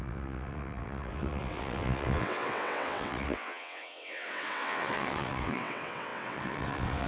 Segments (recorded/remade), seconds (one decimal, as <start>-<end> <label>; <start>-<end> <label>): 0.0-7.1 remade